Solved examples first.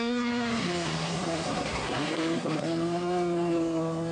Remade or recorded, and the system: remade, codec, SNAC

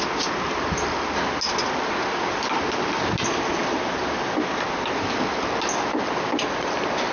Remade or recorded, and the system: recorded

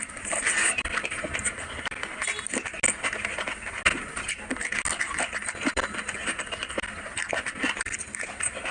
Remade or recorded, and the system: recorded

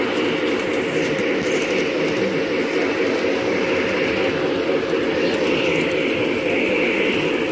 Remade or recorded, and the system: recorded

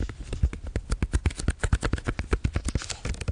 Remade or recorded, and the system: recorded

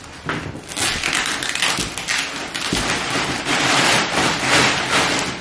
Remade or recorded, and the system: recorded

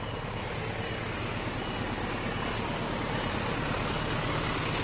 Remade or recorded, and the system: recorded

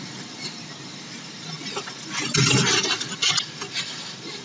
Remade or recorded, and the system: recorded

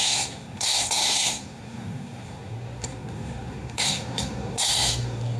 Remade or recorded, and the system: remade, codec, SNAC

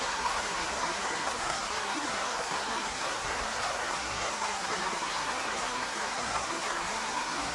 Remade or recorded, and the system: remade, codec, SNAC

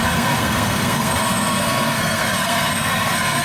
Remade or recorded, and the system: remade, codec, SNAC